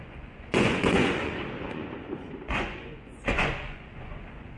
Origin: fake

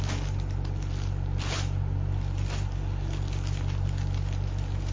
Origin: real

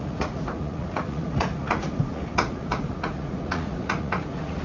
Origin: fake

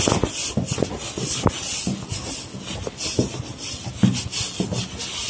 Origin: real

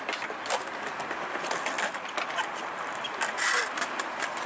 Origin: real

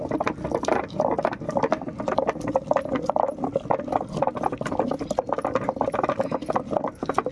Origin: real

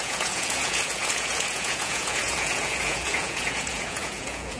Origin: fake